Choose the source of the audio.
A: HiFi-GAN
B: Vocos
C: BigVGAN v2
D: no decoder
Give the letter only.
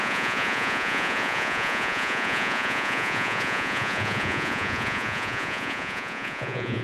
B